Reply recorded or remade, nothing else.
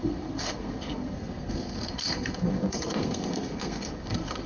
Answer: remade